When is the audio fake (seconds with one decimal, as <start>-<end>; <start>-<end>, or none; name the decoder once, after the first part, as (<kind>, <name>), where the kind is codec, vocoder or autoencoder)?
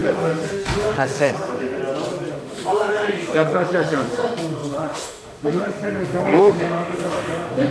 0.0-1.8 (autoencoder, DAC-VAE); 2.3-7.7